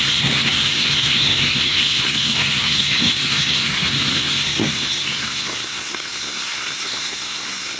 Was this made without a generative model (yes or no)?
no